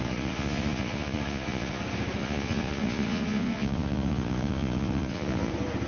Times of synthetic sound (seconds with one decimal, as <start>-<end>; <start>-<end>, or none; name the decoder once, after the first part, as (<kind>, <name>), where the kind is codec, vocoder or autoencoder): 0.0-1.8 (vocoder, Vocos); 2.2-5.5